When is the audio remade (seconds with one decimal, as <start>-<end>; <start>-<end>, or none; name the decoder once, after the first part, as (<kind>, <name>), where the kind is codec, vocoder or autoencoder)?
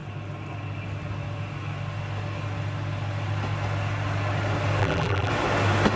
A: 4.8-5.3 (vocoder, BigVGAN v2)